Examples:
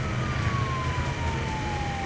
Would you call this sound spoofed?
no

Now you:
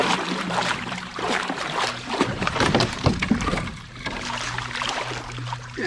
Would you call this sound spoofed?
yes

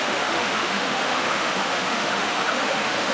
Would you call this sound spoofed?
yes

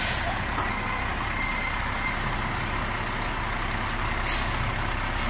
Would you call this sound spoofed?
no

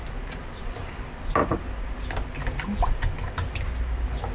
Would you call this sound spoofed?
no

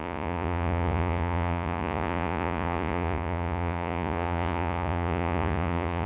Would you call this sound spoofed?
yes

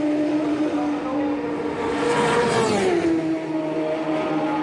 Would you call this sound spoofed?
no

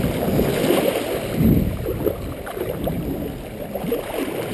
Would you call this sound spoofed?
no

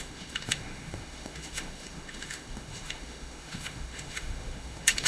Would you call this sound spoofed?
yes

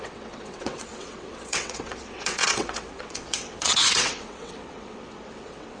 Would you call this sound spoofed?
yes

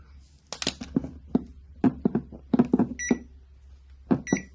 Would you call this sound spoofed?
no